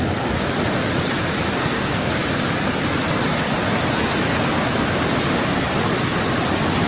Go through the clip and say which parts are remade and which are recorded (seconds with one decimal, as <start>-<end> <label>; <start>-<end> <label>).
0.0-1.6 recorded; 1.6-2.1 remade; 2.1-6.9 recorded